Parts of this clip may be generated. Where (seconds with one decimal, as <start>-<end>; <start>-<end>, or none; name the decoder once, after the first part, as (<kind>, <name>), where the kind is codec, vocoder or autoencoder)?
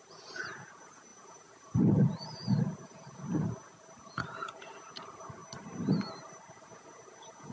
0.0-5.4 (vocoder, Vocos); 6.5-7.5